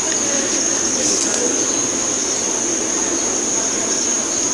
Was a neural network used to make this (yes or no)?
no